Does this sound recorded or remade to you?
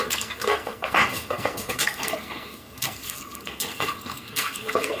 remade